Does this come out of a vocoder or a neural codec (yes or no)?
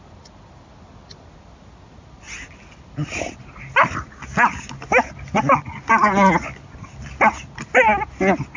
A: no